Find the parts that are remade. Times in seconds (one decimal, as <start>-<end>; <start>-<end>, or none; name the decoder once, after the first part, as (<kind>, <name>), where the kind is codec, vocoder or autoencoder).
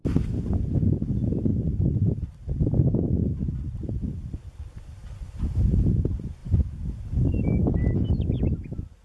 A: none